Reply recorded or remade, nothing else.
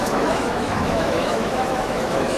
remade